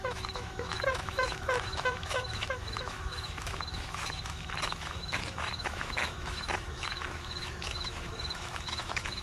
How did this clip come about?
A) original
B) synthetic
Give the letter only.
B